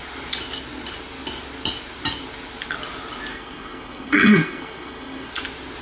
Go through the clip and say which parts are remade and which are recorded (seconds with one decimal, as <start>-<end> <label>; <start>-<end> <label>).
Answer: 0.0-3.3 recorded; 3.3-5.3 remade; 5.3-5.8 recorded